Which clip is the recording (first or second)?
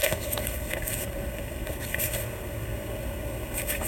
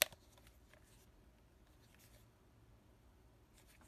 second